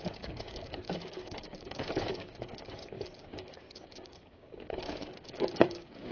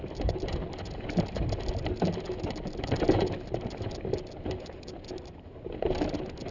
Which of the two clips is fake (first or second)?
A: first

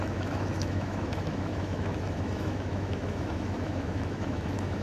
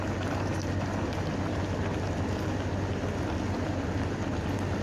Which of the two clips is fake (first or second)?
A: first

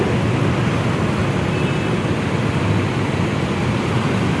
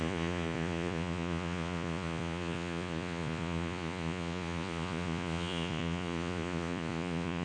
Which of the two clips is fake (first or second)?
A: second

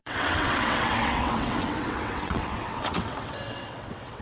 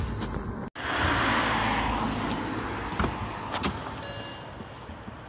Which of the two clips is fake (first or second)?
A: first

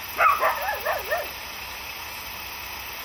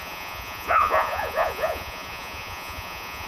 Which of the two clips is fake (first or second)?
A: second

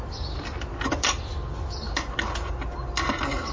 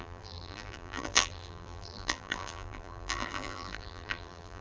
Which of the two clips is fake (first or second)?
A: second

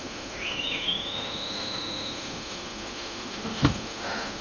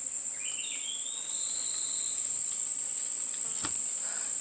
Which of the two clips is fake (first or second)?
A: first